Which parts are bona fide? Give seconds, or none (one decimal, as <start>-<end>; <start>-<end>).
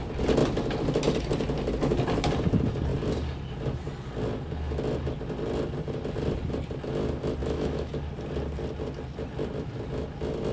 0.0-7.4; 7.9-10.5